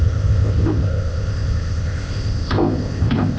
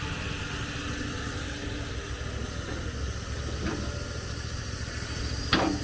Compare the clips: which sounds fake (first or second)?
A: first